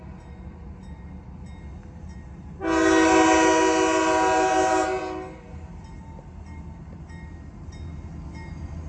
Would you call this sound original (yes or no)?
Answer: yes